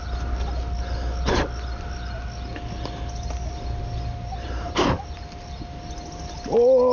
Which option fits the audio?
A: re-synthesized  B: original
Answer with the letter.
B